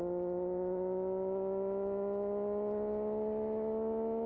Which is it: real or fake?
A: real